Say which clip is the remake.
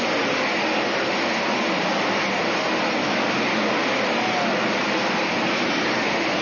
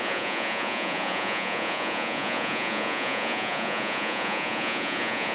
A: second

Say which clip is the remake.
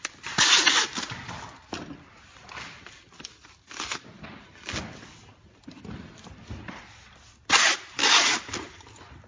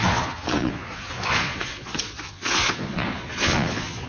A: second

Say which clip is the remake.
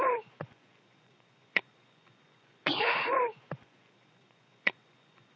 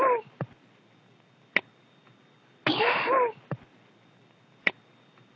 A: first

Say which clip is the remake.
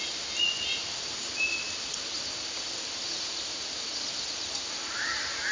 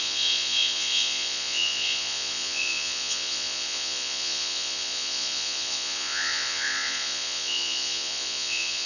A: second